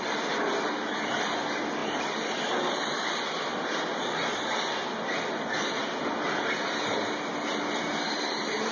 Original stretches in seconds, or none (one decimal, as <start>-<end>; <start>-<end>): 0.0-1.8; 3.8-8.7